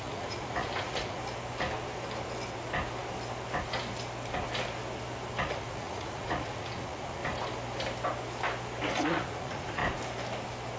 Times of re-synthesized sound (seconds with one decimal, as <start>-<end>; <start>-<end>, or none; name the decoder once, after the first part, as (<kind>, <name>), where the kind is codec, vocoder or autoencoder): 0.0-1.2 (vocoder, Vocos); 5.4-7.2; 9.0-9.8